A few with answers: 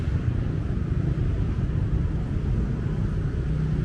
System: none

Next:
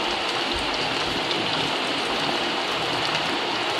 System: none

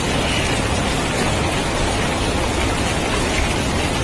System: none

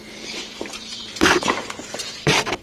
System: vocoder, BigVGAN v2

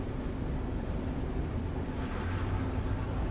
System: none